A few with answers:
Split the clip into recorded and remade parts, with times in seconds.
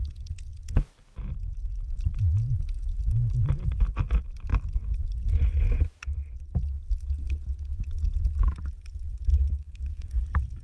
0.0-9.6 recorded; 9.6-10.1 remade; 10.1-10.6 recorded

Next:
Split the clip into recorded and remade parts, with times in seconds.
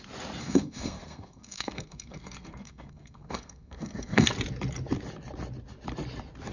0.0-0.4 recorded; 0.4-4.3 remade; 4.3-6.5 recorded